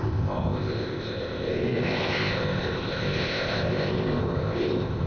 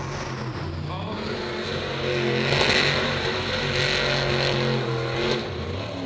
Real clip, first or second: second